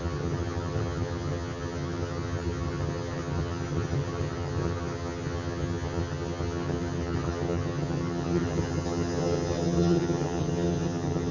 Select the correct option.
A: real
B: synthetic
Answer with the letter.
B